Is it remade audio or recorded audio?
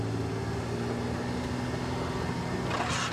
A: recorded